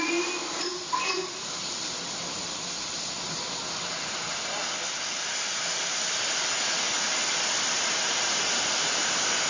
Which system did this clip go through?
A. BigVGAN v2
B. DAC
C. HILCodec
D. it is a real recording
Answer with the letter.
A